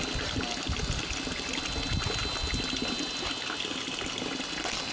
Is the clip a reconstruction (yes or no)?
no